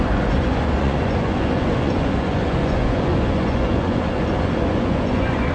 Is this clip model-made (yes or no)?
yes